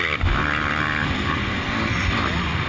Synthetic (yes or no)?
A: no